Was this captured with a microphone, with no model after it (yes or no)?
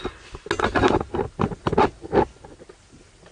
yes